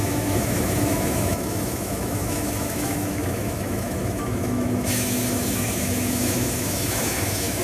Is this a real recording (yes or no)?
no